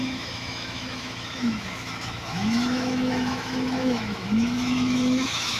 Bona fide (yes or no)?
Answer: no